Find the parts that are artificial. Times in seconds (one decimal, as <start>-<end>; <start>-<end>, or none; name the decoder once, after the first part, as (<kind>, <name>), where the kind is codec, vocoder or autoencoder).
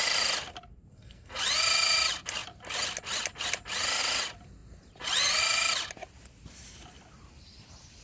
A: 0.9-1.4 (codec, SNAC)